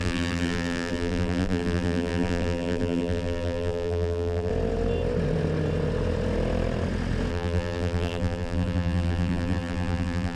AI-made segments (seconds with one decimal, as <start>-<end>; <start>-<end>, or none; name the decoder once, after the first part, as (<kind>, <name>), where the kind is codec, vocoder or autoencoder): 0.0-4.5 (vocoder, BigVGAN v2); 7.3-10.3